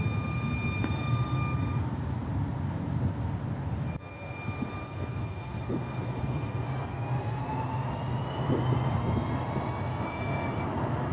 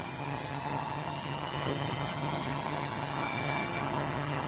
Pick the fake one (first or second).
second